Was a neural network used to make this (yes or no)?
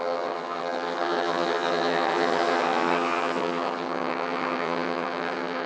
yes